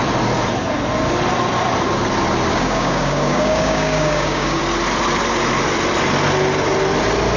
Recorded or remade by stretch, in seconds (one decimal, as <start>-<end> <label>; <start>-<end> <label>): 0.0-2.5 recorded; 2.5-4.6 remade; 4.6-7.4 recorded